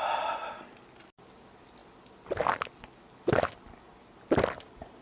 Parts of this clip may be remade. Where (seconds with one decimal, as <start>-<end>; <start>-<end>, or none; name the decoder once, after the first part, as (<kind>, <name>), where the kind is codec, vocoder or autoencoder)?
none